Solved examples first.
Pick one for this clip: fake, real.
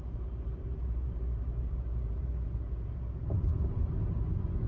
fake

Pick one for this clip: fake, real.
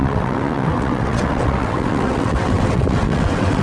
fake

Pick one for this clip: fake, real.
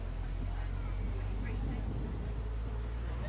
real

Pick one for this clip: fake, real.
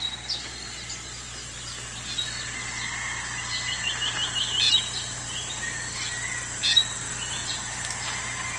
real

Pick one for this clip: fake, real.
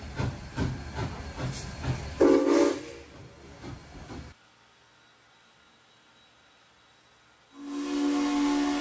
real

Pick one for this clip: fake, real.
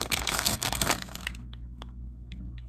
fake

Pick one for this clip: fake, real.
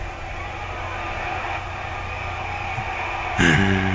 real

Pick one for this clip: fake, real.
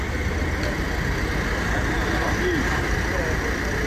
real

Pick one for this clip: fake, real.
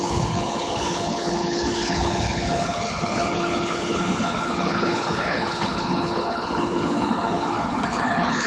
fake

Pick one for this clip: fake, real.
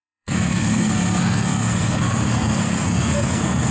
fake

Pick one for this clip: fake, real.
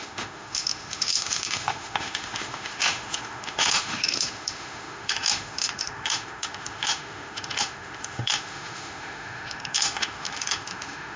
fake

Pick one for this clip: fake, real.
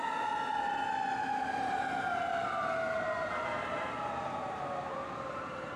fake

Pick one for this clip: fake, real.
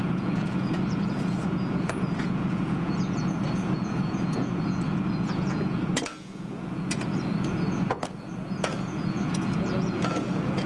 fake